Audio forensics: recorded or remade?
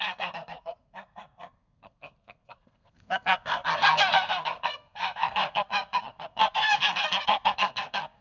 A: remade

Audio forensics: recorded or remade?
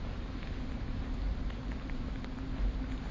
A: recorded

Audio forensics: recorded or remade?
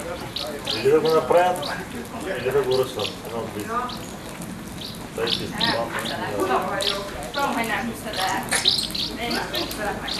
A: recorded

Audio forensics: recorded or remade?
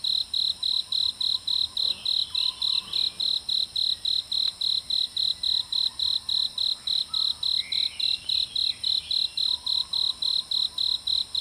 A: remade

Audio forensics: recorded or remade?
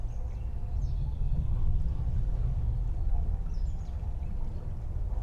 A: recorded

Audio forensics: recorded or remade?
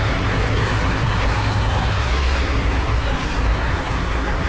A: remade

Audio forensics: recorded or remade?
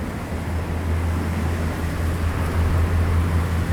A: recorded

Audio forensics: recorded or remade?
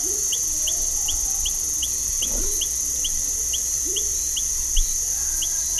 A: recorded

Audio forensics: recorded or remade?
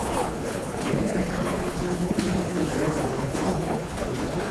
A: remade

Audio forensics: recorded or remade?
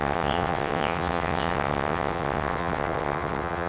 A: remade